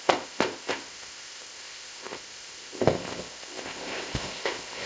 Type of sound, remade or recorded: remade